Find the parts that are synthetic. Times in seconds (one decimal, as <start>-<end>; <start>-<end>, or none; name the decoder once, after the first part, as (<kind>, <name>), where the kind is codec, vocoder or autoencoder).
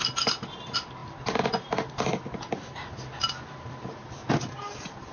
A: none